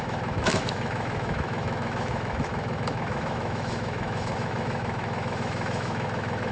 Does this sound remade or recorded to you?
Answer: remade